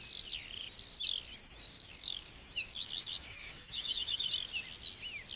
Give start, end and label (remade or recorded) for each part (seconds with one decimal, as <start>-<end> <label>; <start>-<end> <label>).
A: 0.0-1.4 recorded; 1.4-4.3 remade; 4.3-5.4 recorded